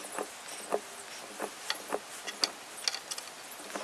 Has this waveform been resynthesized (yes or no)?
no